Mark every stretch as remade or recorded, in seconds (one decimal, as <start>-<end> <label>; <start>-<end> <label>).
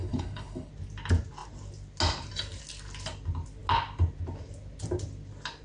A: 0.0-0.7 remade; 0.7-5.6 recorded